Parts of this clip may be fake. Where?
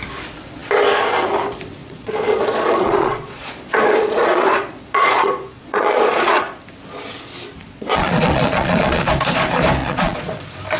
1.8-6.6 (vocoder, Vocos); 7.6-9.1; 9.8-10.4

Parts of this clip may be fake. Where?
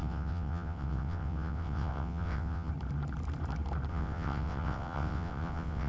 0.0-2.7 (vocoder, WaveNeXt); 3.9-5.9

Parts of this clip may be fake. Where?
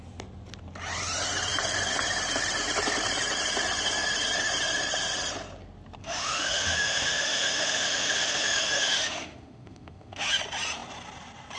6.0-10.3 (autoencoder, DAC-VAE)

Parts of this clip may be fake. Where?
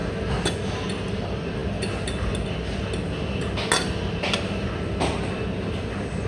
none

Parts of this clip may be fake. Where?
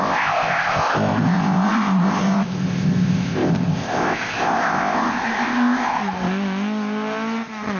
0.0-6.0 (codec, ZipCodec)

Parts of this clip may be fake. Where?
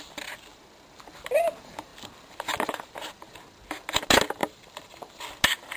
4.4-5.2 (vocoder, BigVGAN v2)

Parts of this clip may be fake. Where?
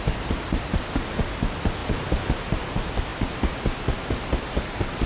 none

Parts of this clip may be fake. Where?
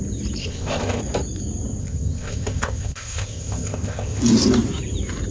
0.4-1.0 (codec, ZipCodec); 1.8-4.2